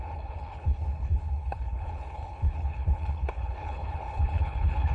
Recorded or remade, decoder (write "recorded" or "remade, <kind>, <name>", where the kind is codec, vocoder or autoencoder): remade, codec, HILCodec